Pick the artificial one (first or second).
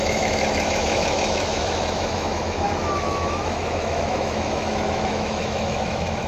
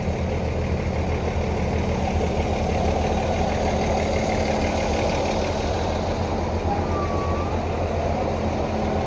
first